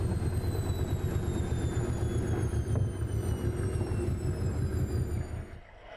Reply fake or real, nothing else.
real